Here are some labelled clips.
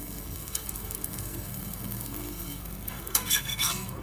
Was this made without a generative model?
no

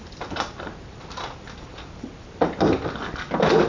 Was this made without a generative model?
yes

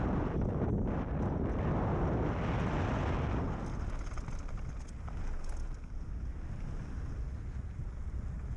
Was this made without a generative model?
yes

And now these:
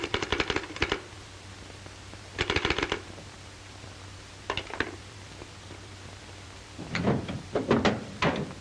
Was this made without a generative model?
no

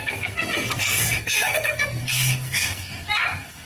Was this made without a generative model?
no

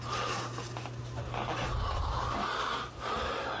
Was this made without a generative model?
yes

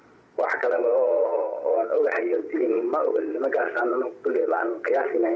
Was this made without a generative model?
no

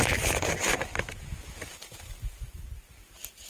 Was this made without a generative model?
yes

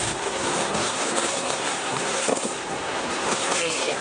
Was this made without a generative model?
no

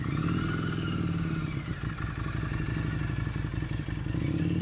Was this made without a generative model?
yes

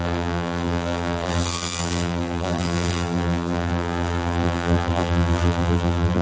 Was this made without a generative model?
no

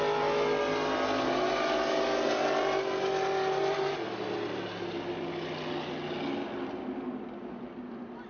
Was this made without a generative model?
yes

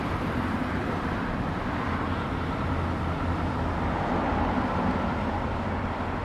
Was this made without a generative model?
no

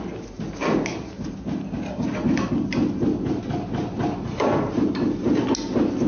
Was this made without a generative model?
yes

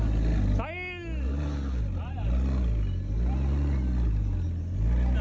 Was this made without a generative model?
yes